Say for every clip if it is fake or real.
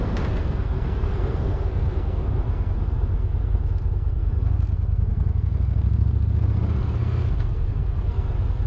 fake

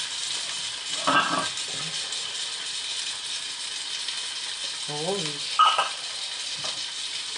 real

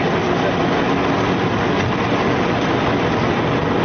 real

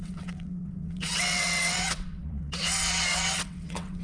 fake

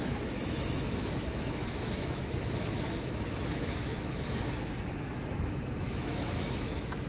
fake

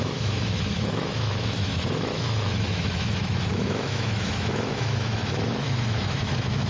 fake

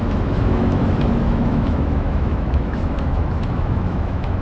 fake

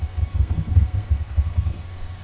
fake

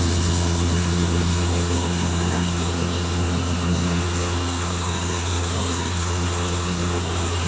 fake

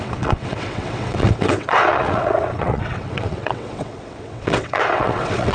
fake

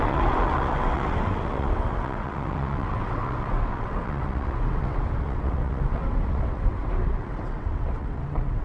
fake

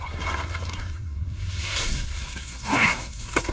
fake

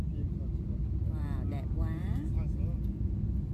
real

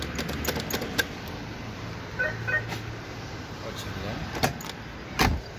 real